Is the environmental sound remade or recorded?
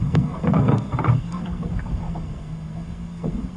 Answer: remade